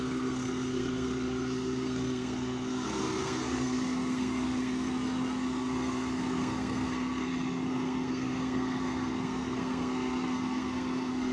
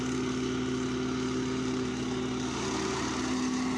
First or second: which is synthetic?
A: first